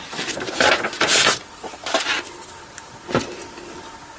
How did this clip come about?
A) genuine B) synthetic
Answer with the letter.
A